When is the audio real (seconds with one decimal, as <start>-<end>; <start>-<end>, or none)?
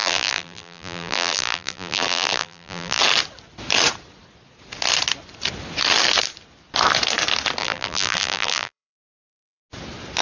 3.0-7.6; 9.6-10.2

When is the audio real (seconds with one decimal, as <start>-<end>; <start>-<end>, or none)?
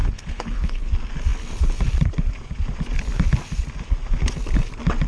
0.9-5.1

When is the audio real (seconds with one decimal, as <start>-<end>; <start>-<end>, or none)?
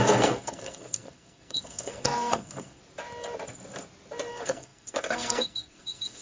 2.8-4.3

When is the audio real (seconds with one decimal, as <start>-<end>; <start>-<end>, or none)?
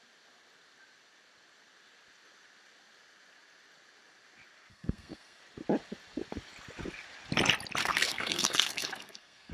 0.0-4.7; 5.4-7.8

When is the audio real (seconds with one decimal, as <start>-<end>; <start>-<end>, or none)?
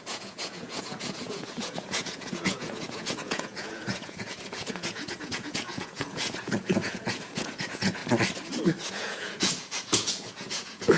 8.0-8.9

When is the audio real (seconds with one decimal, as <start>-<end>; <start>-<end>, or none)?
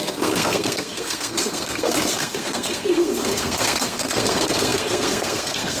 none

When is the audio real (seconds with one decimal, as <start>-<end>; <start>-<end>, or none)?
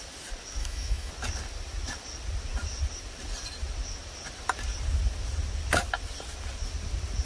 0.0-0.6; 1.1-7.3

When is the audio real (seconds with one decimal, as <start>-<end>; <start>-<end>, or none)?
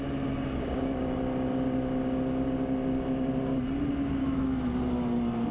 0.0-4.2; 4.7-5.5